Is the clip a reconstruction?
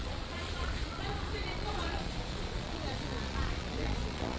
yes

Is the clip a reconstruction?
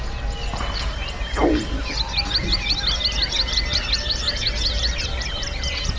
no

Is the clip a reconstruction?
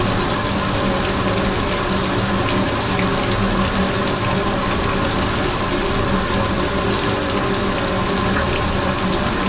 no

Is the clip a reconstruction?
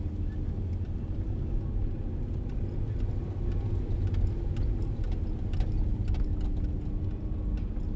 no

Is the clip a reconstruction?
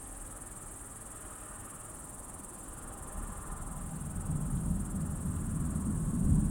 no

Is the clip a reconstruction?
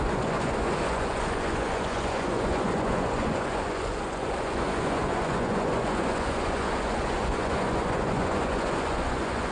yes